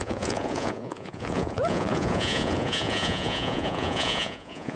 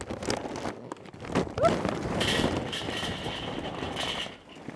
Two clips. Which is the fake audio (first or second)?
first